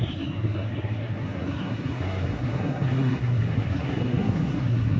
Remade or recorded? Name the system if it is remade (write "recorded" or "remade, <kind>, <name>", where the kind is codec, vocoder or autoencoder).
remade, codec, SNAC